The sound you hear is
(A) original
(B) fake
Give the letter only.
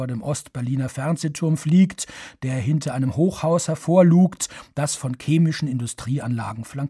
A